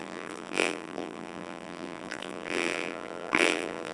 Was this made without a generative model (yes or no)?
no